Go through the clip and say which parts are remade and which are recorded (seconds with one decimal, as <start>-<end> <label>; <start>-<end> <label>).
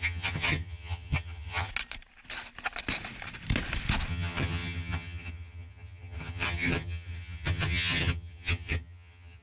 0.0-1.7 remade; 1.7-4.1 recorded; 4.1-9.4 remade